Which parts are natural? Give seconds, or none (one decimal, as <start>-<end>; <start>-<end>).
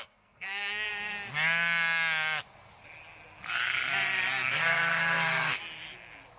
0.9-4.5; 5.6-6.4